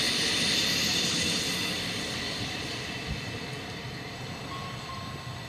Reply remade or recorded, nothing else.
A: recorded